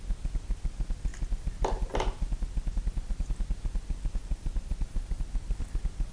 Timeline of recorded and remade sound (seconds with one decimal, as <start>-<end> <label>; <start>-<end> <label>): 0.0-4.2 recorded; 4.2-5.2 remade; 5.2-6.1 recorded